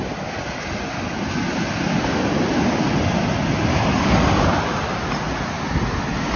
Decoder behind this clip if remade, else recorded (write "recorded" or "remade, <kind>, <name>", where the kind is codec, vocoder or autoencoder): recorded